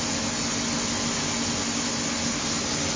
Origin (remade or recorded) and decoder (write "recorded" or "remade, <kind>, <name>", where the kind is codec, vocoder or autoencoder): recorded